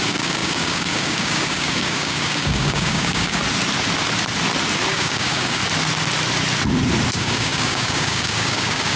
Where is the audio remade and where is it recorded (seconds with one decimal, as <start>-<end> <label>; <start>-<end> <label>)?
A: 0.0-3.4 remade; 3.4-4.9 recorded; 4.9-5.6 remade; 5.6-7.1 recorded; 7.1-9.0 remade